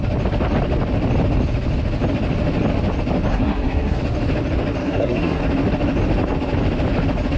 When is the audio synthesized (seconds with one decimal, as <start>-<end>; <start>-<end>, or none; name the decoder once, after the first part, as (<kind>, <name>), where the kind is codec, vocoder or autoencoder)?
3.3-4.0 (codec, SNAC); 4.8-5.4